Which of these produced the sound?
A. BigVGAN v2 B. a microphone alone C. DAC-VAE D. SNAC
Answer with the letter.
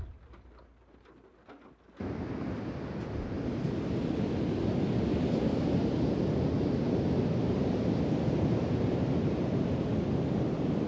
B